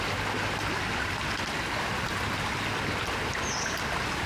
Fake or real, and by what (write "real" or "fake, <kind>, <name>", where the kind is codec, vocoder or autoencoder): real